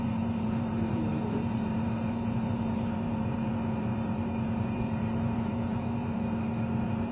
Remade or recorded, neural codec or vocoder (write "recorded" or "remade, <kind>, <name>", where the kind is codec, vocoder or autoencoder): remade, vocoder, BigVGAN v2